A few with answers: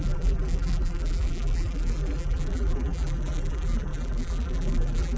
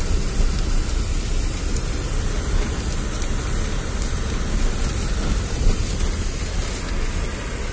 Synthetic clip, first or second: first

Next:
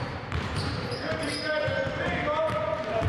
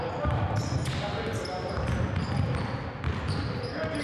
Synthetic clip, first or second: first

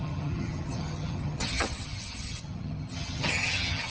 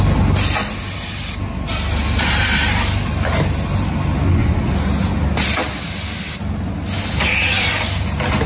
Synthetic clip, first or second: first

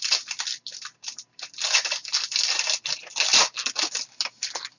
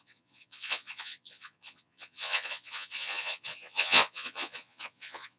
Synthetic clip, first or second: second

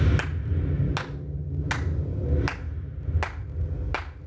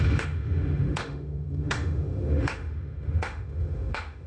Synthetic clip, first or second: second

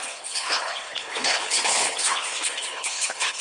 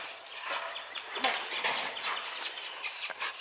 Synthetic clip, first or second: first